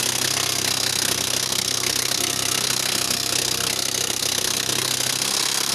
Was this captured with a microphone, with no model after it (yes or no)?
no